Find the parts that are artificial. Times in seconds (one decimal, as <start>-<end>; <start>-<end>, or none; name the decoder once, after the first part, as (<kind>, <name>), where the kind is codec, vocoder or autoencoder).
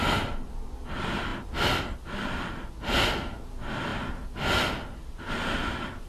none